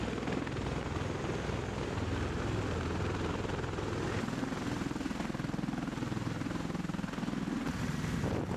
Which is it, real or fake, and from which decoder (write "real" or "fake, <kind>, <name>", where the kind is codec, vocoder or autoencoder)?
real